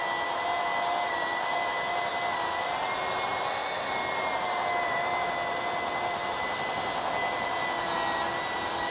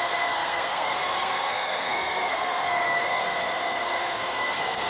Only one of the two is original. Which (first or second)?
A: first